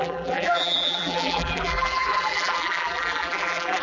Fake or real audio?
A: fake